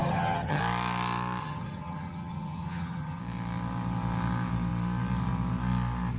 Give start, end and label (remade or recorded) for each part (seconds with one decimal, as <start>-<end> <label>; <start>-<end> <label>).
0.0-0.6 remade; 0.6-1.4 recorded; 1.4-3.2 remade; 3.2-6.2 recorded